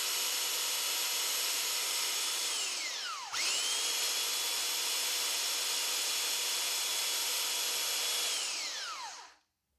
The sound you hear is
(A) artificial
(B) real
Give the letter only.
B